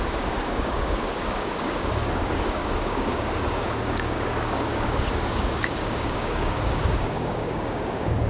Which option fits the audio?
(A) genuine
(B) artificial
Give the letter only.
B